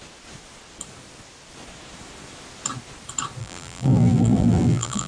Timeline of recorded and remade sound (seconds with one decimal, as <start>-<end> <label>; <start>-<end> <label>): 0.0-3.4 recorded; 3.4-5.1 remade